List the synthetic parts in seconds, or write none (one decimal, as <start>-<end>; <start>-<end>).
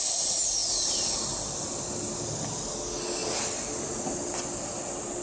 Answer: none